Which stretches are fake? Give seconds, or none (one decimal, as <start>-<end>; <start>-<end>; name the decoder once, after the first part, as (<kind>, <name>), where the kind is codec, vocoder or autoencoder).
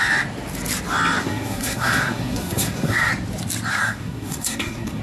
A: 1.2-3.1 (codec, SNAC); 3.7-5.0